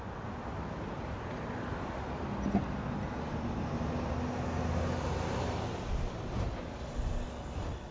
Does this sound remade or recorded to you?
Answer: recorded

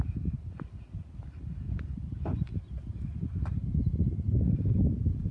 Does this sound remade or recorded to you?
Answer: recorded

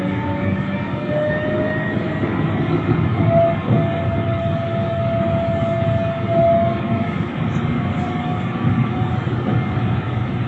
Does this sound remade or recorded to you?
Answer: remade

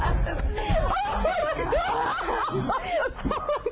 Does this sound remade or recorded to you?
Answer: recorded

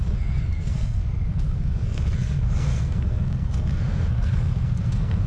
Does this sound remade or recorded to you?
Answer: remade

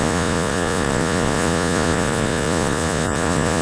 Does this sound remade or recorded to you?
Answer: remade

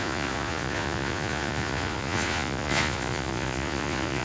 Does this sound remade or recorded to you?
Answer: remade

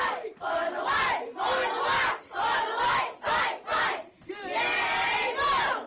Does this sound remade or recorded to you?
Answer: recorded